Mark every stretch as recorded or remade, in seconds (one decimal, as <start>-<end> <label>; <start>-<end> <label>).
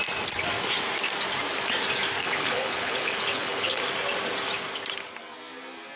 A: 0.0-2.2 recorded; 2.2-3.8 remade; 3.8-6.0 recorded